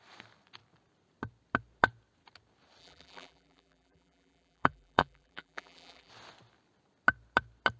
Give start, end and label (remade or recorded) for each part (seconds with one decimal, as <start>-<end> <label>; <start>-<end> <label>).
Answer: 0.0-2.8 recorded; 2.8-6.1 remade; 6.1-7.8 recorded